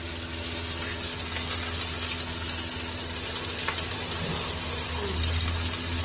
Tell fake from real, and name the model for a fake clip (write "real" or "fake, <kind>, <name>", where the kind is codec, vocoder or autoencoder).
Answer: real